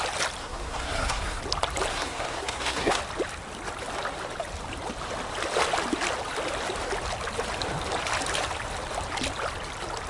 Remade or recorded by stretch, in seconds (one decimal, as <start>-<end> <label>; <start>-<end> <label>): 0.0-0.4 recorded; 0.4-1.4 remade; 1.4-1.9 recorded; 1.9-3.0 remade; 3.0-10.1 recorded